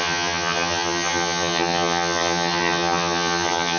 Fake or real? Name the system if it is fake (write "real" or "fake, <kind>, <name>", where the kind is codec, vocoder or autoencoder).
fake, vocoder, HiFi-GAN